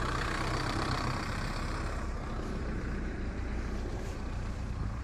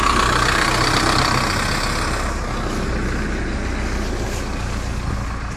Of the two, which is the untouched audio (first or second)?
second